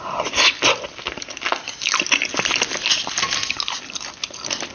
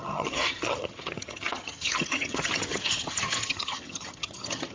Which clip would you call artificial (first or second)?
second